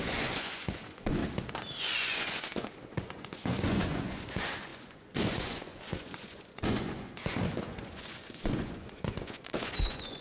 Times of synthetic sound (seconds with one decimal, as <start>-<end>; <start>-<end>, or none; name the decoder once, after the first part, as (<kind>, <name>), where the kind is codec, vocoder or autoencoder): 0.0-1.2 (vocoder, Vocos); 1.8-10.2